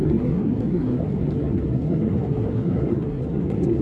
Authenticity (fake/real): fake